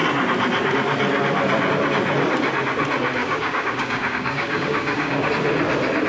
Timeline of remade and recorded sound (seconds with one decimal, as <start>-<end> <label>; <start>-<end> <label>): 0.0-3.2 recorded; 3.2-5.3 remade; 5.3-6.1 recorded